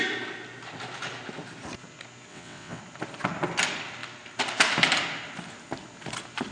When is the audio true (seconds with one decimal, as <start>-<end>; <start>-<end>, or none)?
0.0-2.3; 2.8-6.5